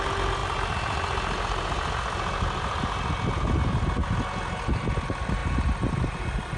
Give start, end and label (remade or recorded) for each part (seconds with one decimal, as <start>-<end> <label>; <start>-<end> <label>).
0.0-6.6 recorded

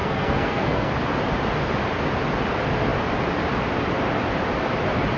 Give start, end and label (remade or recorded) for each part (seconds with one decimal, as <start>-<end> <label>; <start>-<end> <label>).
0.0-0.9 remade; 0.9-5.2 recorded

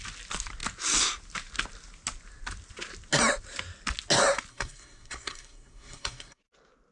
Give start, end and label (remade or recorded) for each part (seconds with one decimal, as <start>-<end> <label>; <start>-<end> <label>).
0.0-4.5 recorded; 4.5-6.4 remade; 6.4-6.9 recorded

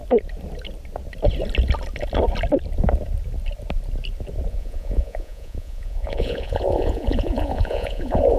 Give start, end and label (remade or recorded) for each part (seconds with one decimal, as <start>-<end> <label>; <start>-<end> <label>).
0.0-4.5 recorded; 4.5-8.4 remade